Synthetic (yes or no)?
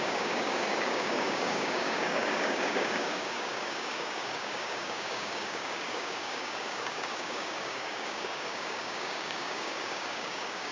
yes